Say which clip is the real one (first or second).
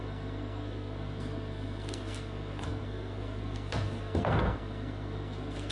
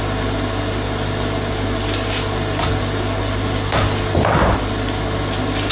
second